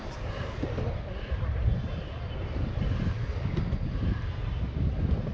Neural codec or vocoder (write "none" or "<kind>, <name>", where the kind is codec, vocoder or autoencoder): none